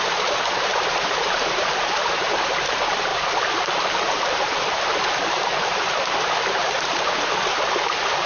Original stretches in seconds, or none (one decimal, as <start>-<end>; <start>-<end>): none